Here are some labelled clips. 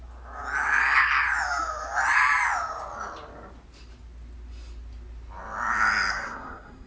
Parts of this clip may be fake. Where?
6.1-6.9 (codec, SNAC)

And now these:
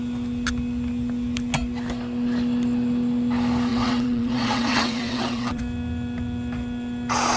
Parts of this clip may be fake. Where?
3.7-5.6 (vocoder, WaveNeXt)

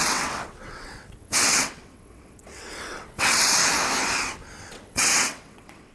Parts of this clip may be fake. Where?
0.0-3.6 (vocoder, WaveNeXt); 4.6-5.9

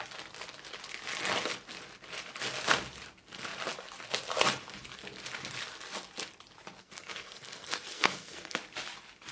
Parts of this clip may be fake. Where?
6.8-8.6 (codec, SNAC)

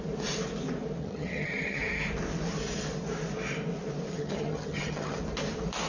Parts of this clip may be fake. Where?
1.0-1.8 (vocoder, HiFi-GAN); 4.1-5.2

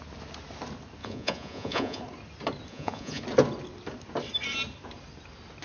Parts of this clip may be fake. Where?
1.0-2.0 (vocoder, Vocos); 2.7-3.2